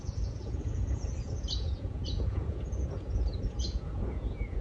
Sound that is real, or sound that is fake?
fake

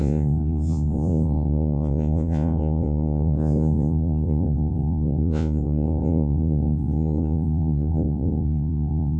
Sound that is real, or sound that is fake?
fake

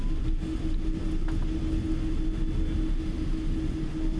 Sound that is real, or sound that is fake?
real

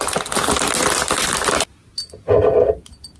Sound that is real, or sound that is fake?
real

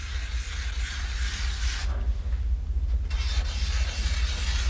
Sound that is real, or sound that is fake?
real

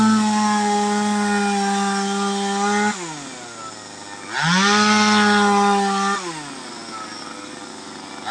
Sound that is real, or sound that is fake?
real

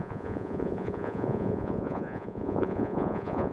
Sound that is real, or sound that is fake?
fake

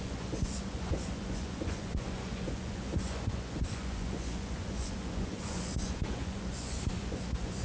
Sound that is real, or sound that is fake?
fake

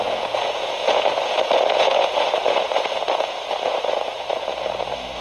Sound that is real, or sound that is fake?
fake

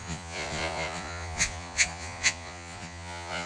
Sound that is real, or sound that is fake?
fake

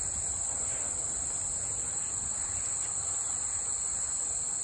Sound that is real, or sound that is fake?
real